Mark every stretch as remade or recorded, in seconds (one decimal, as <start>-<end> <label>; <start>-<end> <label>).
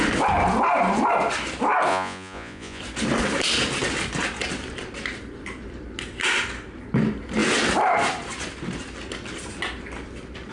0.0-1.9 recorded; 1.9-2.8 remade; 2.8-10.5 recorded